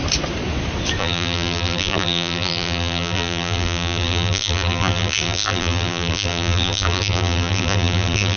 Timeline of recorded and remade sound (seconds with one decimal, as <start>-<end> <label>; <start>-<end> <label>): 0.0-1.0 recorded; 1.0-8.4 remade